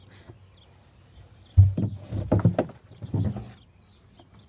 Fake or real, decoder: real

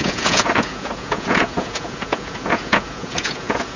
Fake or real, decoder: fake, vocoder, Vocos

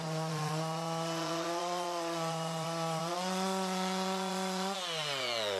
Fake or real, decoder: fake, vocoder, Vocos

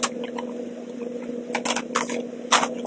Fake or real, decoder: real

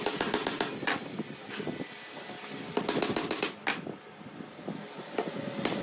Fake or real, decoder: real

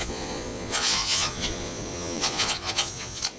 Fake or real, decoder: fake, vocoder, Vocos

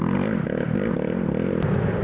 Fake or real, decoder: real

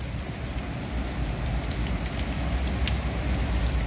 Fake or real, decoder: real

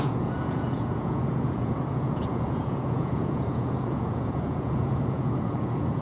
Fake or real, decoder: fake, vocoder, Vocos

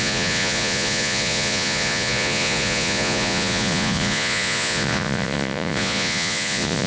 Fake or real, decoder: fake, vocoder, Vocos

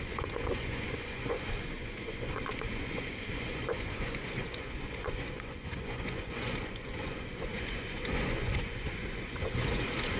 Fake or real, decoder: fake, vocoder, Vocos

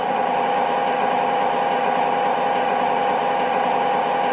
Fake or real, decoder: real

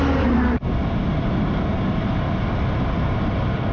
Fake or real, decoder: real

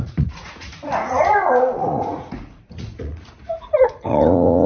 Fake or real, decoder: fake, vocoder, Vocos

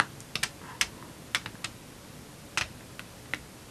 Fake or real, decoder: real